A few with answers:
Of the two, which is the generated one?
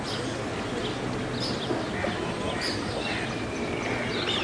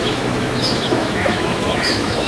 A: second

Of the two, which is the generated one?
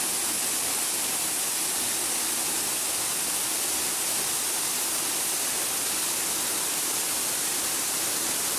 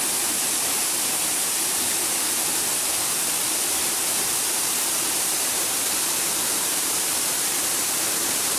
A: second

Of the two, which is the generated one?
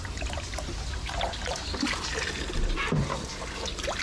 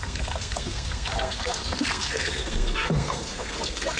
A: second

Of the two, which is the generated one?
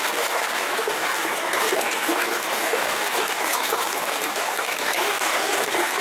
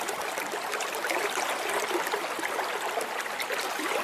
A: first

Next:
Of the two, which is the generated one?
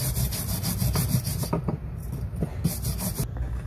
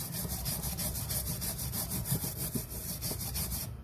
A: second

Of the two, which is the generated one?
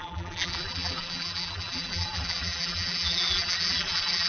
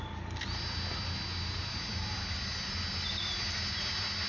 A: first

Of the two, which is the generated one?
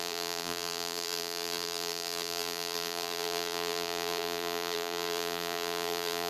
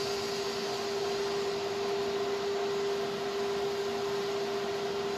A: first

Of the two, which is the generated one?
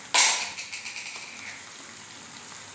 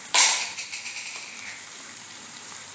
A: second